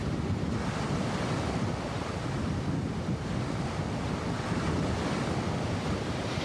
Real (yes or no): yes